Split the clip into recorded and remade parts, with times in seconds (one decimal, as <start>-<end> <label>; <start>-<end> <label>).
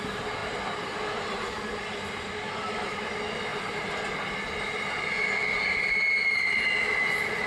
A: 0.0-7.5 recorded